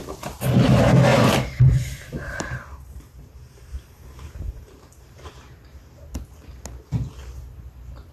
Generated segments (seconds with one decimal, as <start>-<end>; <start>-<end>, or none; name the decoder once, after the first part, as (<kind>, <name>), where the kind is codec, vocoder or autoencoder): 1.1-5.3 (vocoder, BigVGAN v2)

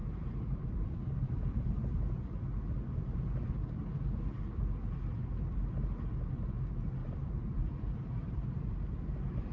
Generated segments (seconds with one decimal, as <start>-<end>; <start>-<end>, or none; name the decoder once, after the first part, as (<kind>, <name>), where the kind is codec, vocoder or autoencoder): 0.0-2.0 (vocoder, BigVGAN v2); 7.0-8.6

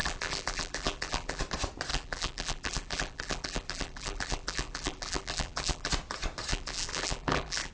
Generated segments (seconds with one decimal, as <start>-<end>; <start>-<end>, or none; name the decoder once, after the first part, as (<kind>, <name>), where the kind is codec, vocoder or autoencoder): 0.0-1.4 (vocoder, BigVGAN v2); 1.9-5.9; 6.5-7.7

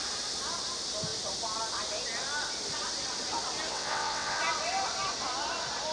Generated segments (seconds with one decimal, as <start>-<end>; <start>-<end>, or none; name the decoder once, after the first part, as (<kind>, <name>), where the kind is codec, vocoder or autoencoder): 3.7-4.4 (vocoder, WaveNeXt)

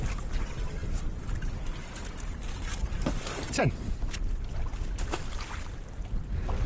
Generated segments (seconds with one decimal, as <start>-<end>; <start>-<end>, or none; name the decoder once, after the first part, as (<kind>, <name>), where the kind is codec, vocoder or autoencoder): none